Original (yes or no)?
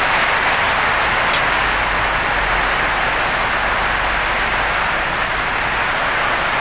yes